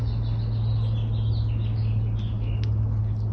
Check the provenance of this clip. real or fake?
real